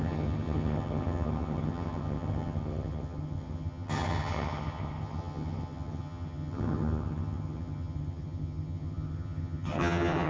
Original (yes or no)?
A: no